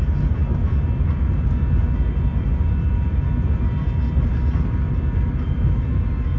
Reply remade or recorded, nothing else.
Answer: recorded